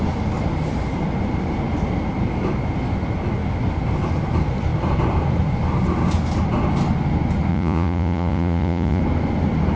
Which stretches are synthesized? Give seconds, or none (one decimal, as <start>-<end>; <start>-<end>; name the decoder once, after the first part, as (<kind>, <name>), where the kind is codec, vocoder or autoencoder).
7.5-9.0 (vocoder, Vocos)